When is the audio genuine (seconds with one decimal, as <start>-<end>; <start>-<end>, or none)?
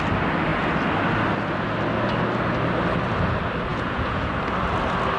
0.0-3.7; 4.3-5.2